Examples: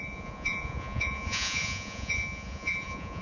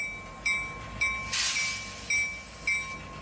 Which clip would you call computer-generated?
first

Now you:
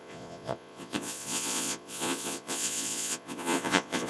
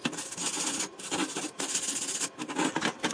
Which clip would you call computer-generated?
first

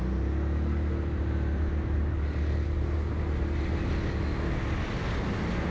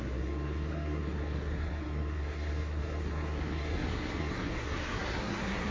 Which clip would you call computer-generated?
second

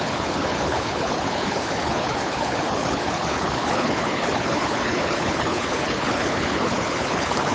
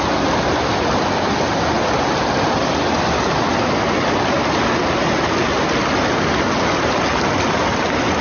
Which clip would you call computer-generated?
first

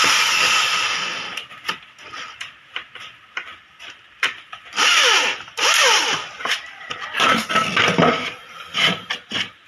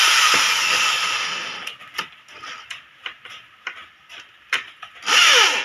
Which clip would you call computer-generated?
first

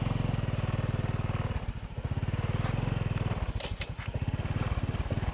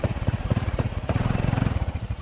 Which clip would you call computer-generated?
second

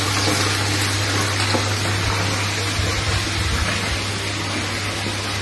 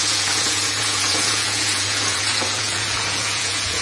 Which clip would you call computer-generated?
second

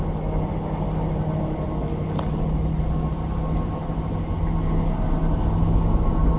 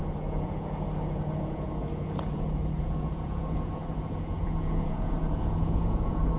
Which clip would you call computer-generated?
second